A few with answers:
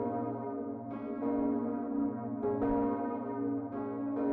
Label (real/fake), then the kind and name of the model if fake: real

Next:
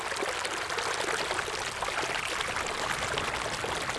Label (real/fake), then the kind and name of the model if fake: real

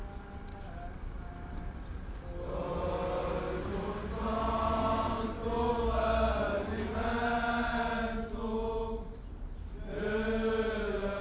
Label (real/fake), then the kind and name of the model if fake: real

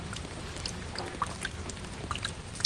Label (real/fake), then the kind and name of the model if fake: real